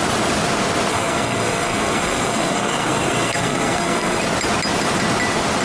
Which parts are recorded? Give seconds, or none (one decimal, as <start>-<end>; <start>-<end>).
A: 0.0-0.9; 4.2-5.6